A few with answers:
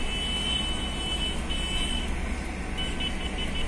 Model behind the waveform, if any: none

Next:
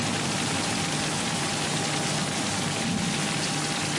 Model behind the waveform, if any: none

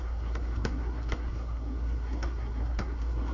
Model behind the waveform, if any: codec, SNAC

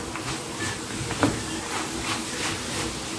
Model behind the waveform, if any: none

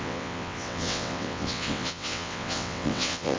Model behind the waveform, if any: vocoder, WaveNeXt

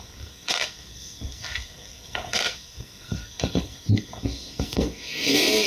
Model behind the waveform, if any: codec, SNAC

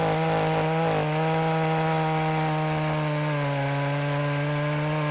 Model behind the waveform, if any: none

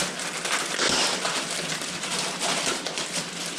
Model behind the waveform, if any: none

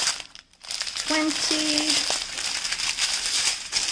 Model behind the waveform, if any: none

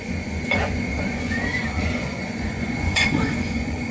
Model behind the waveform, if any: vocoder, Vocos